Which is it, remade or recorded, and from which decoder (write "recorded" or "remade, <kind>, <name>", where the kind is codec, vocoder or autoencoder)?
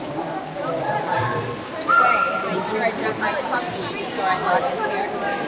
recorded